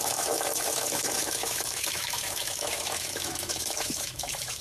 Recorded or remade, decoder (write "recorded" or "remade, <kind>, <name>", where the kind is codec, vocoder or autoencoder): remade, autoencoder, DAC-VAE